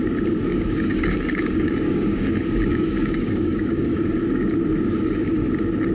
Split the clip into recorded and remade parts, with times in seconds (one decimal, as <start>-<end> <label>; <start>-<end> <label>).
0.0-0.5 recorded; 0.5-4.0 remade; 4.0-5.9 recorded